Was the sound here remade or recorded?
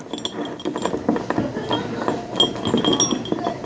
recorded